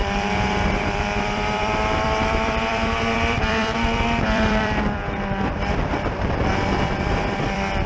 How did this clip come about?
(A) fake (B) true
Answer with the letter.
A